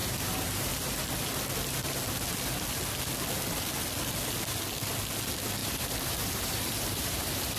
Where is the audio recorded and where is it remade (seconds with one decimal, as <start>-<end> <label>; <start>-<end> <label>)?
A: 0.0-0.7 remade; 0.7-5.6 recorded; 5.6-7.6 remade